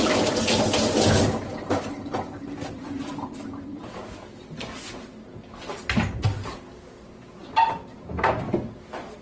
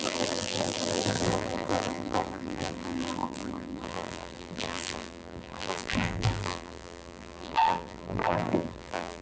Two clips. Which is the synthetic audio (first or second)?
second